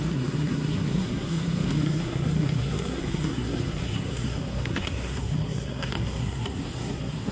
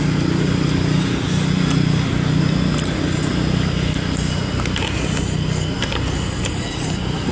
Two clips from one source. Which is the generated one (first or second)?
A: first